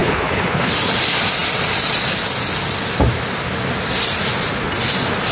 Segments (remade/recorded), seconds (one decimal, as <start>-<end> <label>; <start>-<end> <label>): 0.0-0.7 remade; 0.7-5.3 recorded